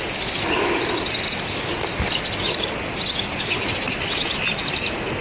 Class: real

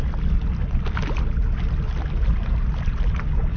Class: real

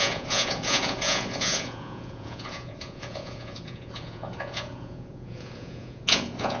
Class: fake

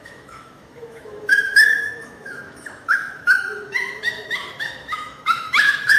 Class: fake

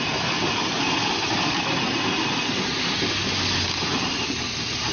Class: real